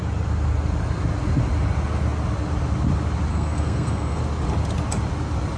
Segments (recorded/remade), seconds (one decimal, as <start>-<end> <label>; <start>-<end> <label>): 0.0-3.3 recorded; 3.3-4.2 remade; 4.2-5.6 recorded